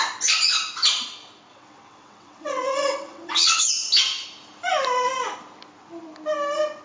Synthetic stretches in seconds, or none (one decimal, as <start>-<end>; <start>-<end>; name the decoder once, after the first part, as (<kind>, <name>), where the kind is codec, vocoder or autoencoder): 1.5-3.7 (vocoder, WaveNeXt)